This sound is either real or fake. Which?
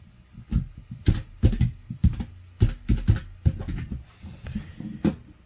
real